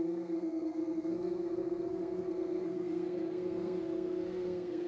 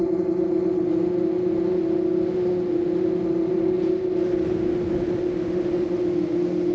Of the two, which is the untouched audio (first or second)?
second